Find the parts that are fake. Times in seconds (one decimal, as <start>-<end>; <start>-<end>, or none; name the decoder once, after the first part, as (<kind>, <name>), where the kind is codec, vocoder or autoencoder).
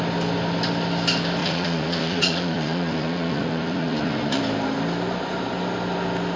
1.4-4.4 (vocoder, Vocos)